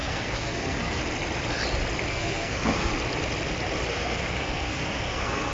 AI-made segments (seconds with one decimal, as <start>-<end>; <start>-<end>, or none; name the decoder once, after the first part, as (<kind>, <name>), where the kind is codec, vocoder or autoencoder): 0.0-1.0 (codec, SNAC); 2.1-2.9; 3.9-5.5